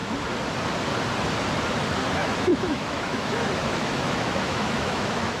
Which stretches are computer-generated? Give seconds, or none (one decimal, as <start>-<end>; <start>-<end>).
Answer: 1.9-5.4